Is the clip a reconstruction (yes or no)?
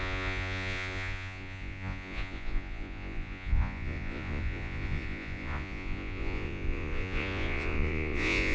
yes